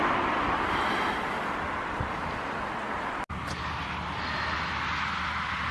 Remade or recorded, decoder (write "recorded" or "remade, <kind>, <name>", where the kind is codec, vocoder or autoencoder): recorded